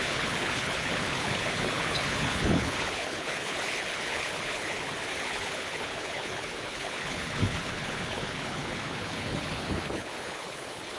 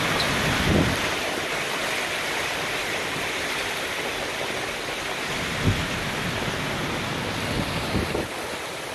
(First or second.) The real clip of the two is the second